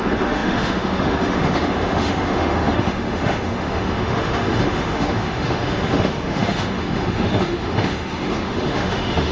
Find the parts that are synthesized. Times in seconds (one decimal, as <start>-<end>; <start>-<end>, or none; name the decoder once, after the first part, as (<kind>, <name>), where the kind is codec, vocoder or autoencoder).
0.0-9.3 (autoencoder, DAC-VAE)